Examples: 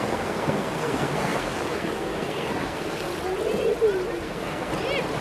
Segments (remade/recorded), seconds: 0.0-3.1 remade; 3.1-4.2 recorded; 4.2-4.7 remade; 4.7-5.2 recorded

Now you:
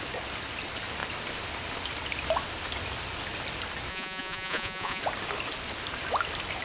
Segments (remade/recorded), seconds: 0.0-3.9 recorded; 3.9-5.0 remade; 5.0-6.6 recorded

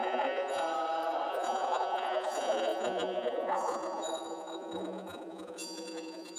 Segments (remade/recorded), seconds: 0.0-0.6 remade; 0.6-1.3 recorded; 1.3-6.4 remade

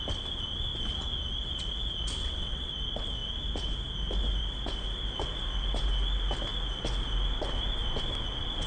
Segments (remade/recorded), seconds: 0.0-2.2 recorded; 2.2-2.7 remade; 2.7-8.7 recorded

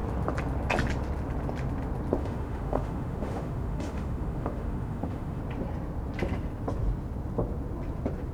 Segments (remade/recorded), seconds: 0.0-2.2 recorded; 2.2-5.4 remade; 5.4-8.3 recorded

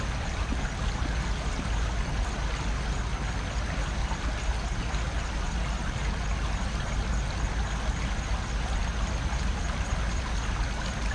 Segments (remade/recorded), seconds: 0.0-11.1 recorded

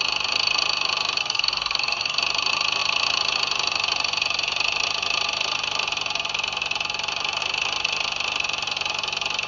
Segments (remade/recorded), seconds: 0.0-1.2 recorded; 1.2-2.2 remade; 2.2-9.5 recorded

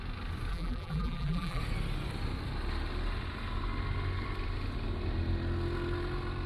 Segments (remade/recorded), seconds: 0.0-0.5 recorded; 0.5-1.6 remade; 1.6-6.5 recorded